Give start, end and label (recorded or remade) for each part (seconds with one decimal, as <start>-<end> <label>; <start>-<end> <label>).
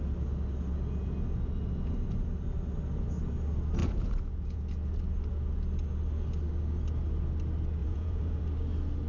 0.0-3.8 recorded; 3.8-4.7 remade; 4.7-7.8 recorded; 7.8-8.4 remade; 8.4-9.1 recorded